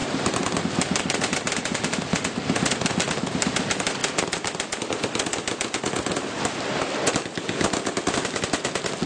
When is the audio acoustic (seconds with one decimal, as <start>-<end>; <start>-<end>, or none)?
0.6-9.1